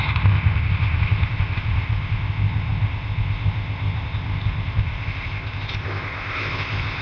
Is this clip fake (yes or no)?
yes